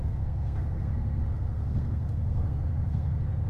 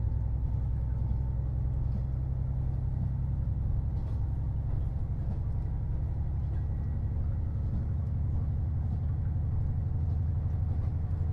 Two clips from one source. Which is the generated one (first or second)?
first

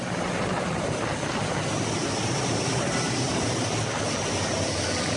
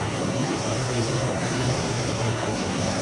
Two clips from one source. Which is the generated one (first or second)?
second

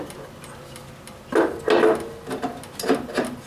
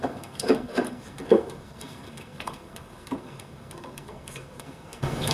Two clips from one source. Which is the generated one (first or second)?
second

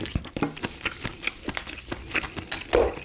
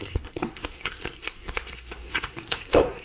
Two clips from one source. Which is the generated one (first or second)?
second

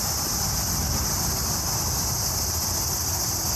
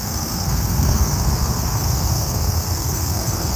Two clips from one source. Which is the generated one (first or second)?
second